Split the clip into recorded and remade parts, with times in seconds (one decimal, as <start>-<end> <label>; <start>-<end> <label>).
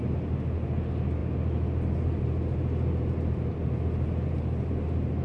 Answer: 0.0-5.2 recorded